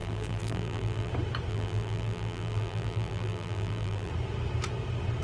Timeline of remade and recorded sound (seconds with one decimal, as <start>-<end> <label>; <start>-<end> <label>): 0.0-1.1 remade; 1.1-1.5 recorded; 1.5-4.1 remade; 4.1-5.2 recorded